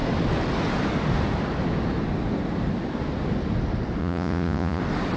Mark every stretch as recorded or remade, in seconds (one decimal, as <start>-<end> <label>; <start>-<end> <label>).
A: 0.0-4.0 recorded; 4.0-4.8 remade; 4.8-5.2 recorded